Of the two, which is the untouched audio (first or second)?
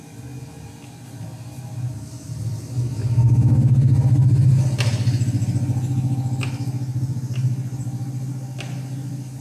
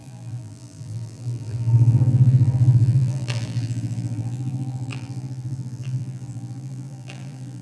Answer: first